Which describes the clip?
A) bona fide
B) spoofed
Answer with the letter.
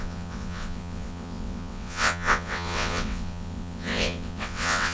B